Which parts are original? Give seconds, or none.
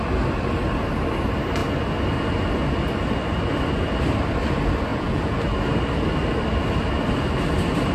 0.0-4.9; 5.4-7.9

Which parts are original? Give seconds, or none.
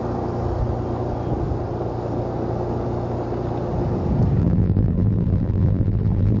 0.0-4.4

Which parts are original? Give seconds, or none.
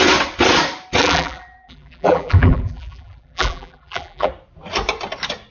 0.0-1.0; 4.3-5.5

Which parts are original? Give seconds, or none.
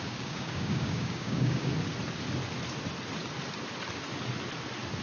1.7-5.0